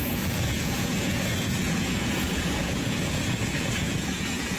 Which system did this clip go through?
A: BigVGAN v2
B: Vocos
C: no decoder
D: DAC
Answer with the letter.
B